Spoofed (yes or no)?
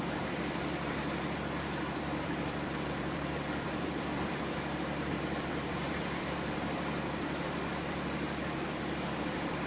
yes